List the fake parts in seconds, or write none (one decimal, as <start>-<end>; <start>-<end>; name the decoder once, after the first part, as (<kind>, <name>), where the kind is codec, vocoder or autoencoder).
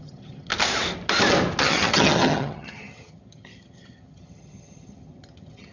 0.0-0.5 (vocoder, HiFi-GAN); 1.6-5.7